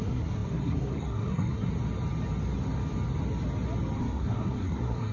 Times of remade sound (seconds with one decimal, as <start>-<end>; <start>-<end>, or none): 0.0-1.7; 4.0-5.1